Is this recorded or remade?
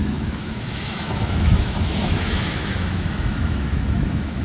remade